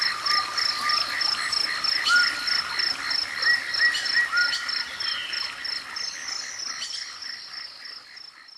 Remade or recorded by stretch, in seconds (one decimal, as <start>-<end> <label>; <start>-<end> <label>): 0.0-8.6 recorded